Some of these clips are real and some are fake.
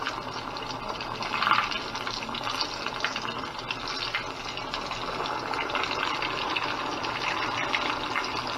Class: real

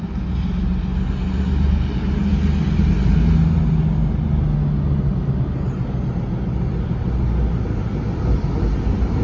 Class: real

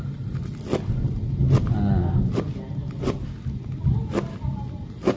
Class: real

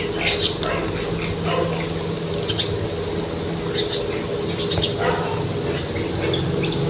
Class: real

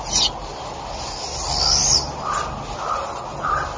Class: real